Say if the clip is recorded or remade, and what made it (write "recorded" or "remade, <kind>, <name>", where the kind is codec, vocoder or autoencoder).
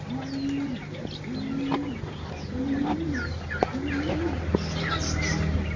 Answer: recorded